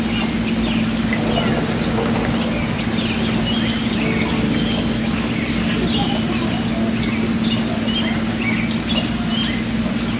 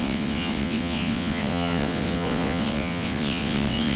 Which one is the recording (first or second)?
first